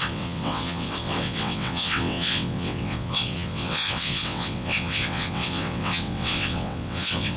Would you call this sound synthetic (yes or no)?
yes